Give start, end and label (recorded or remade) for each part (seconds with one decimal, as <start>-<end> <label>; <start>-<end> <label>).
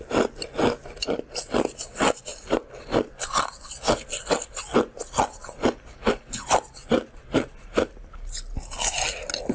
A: 0.0-9.5 recorded